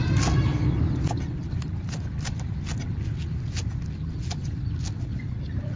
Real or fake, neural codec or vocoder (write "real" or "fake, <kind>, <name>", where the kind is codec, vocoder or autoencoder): real